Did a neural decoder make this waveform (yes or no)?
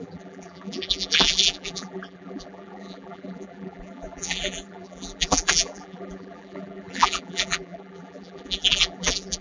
yes